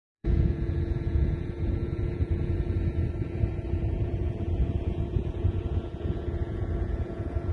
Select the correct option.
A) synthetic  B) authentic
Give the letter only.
A